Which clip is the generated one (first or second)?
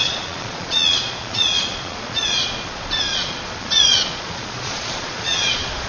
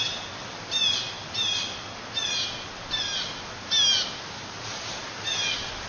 first